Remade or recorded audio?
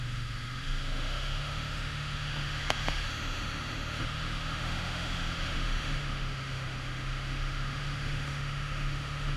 remade